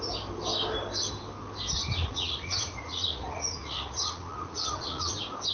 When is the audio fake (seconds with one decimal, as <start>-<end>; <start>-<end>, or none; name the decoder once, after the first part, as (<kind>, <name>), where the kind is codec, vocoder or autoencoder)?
1.8-5.1 (vocoder, Vocos)